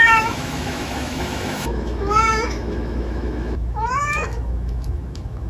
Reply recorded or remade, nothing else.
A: remade